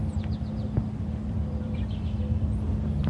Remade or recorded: remade